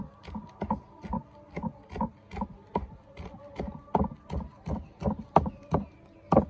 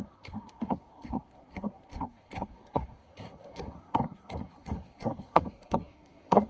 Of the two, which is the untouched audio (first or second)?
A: first